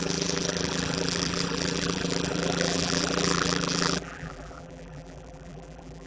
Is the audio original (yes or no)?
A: no